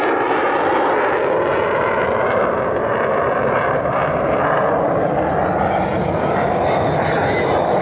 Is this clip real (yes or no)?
no